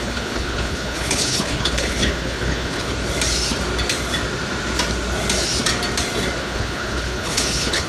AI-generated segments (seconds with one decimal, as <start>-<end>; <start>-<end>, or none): 0.0-2.9; 6.4-7.9